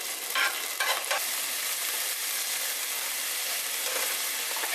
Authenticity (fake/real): real